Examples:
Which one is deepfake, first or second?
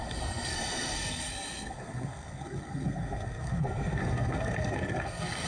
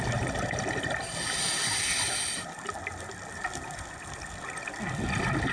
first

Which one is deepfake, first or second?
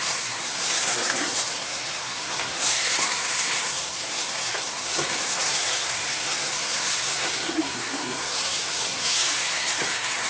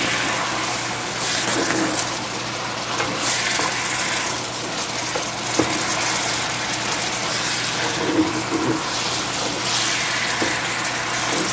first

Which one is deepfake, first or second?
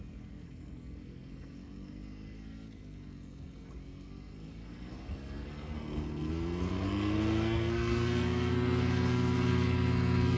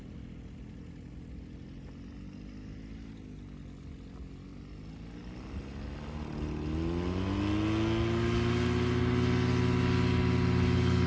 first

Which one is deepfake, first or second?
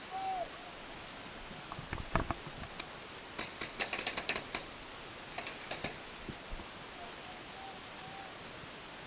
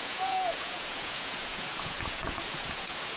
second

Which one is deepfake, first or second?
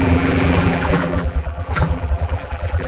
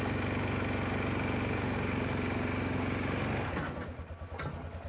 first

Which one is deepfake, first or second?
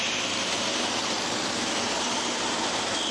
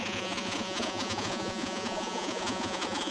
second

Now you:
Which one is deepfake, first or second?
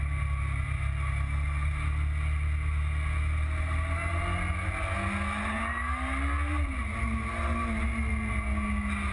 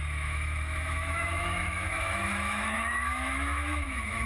second